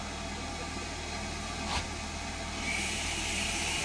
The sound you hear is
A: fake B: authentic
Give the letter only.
B